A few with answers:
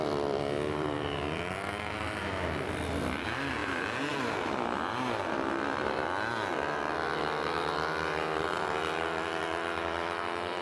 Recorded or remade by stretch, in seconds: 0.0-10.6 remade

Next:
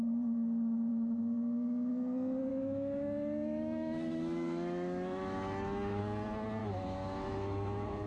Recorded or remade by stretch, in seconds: 0.0-0.9 recorded; 0.9-1.9 remade; 1.9-2.5 recorded; 2.5-6.0 remade; 6.0-6.6 recorded; 6.6-8.1 remade

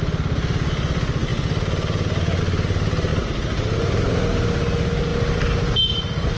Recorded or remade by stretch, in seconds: 0.0-6.4 recorded